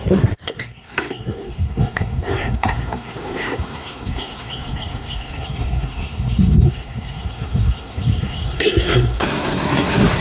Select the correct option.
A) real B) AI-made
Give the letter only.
B